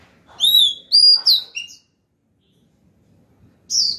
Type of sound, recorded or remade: recorded